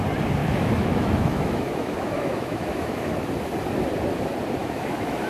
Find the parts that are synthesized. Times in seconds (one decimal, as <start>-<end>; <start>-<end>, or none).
0.4-3.3; 4.6-5.3